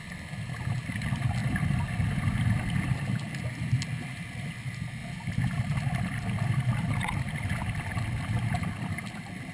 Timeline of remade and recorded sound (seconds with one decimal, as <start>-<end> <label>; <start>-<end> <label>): 0.0-5.0 remade; 5.0-5.6 recorded; 5.6-9.5 remade